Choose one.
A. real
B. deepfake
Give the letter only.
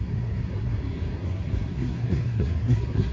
B